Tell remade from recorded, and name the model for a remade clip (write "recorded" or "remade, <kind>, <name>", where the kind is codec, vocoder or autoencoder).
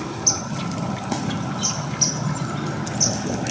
recorded